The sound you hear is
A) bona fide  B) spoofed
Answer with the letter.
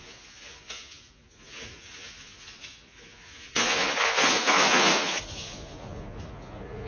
B